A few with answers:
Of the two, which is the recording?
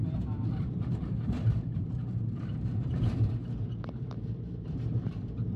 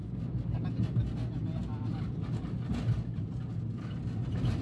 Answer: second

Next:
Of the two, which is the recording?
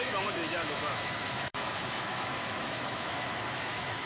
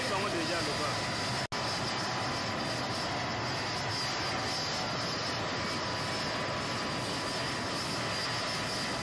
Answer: second